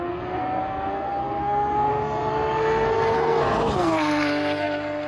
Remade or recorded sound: remade